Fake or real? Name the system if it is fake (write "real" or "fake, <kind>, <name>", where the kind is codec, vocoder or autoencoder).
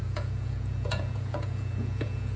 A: fake, vocoder, Vocos